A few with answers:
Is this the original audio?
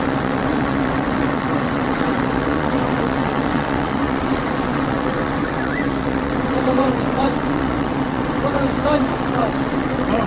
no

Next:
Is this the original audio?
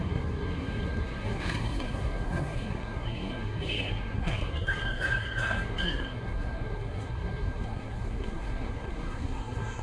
no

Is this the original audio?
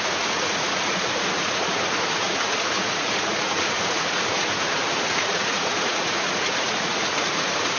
no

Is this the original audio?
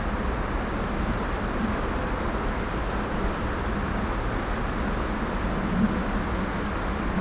yes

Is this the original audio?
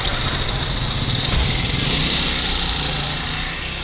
yes